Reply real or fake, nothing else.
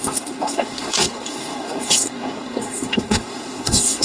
fake